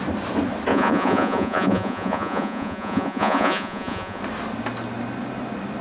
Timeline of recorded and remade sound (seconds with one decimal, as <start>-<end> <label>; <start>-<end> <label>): 0.0-0.7 recorded; 0.7-4.2 remade; 4.2-5.8 recorded

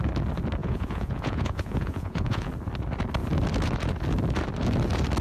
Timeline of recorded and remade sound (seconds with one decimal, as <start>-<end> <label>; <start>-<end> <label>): 0.0-0.6 recorded; 0.6-2.5 remade; 2.5-5.2 recorded